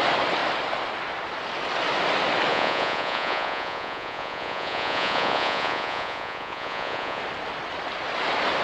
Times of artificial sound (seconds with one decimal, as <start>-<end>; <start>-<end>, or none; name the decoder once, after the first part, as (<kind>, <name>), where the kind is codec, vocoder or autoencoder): 2.5-7.2 (vocoder, Vocos)

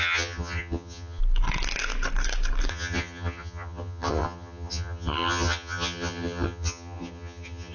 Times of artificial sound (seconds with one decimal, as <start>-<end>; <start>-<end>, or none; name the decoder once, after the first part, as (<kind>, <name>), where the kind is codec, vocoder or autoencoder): 0.0-1.2 (vocoder, HiFi-GAN); 2.7-7.7

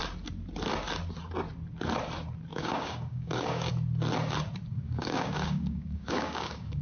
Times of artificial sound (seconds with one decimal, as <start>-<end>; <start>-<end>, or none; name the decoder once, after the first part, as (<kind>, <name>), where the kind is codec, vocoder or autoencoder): 2.5-3.7 (codec, DAC); 4.7-6.8

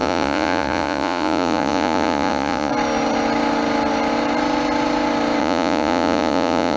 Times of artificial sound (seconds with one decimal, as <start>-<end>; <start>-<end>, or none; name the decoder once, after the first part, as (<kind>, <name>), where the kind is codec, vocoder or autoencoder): 0.0-2.7 (vocoder, Vocos); 5.4-6.8